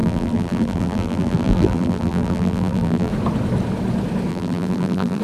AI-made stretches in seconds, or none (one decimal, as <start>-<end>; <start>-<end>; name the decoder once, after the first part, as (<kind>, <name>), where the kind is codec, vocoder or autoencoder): 0.0-3.1 (vocoder, BigVGAN v2); 4.3-5.2